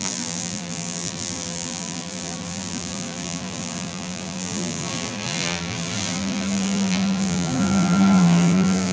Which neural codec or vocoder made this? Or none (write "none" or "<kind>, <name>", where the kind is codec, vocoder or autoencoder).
vocoder, BigVGAN v2